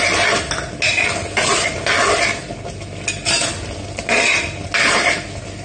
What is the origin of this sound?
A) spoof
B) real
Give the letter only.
B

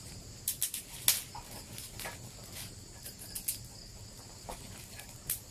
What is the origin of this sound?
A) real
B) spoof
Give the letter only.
A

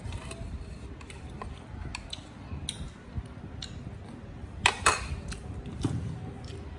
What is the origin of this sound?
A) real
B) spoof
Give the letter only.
A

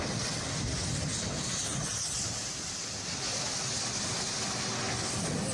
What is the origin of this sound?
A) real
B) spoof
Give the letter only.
A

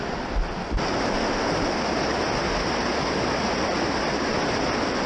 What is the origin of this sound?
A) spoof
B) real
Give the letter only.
B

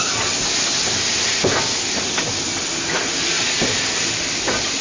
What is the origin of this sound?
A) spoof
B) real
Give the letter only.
B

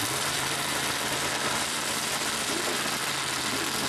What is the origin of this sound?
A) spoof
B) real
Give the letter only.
A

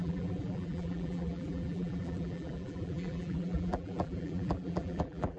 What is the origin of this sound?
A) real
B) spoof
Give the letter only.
B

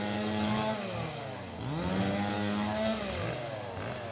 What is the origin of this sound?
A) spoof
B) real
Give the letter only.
B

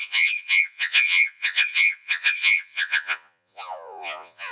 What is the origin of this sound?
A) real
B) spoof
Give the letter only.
B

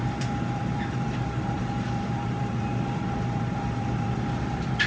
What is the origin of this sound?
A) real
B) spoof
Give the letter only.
B